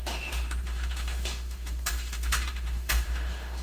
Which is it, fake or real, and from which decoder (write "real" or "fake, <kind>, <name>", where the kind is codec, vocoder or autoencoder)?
fake, autoencoder, DAC-VAE